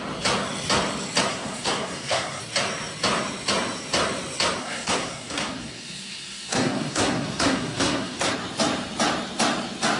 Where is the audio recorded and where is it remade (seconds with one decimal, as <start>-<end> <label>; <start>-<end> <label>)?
0.0-1.3 recorded; 1.3-2.4 remade; 2.4-4.6 recorded; 4.6-8.3 remade; 8.3-10.0 recorded